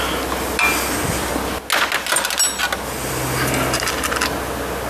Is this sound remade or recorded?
recorded